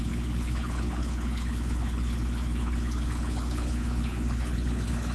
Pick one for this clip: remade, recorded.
remade